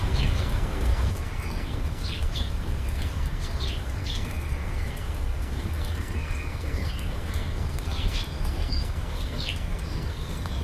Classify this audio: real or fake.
fake